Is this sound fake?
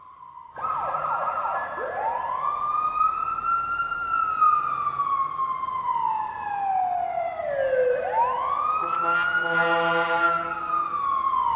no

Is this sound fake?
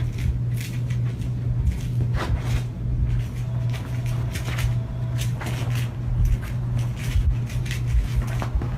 no